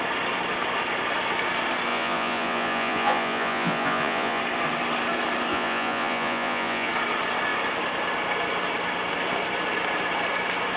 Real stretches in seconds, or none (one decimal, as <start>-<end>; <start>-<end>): 0.0-1.9; 4.4-5.5; 6.9-10.8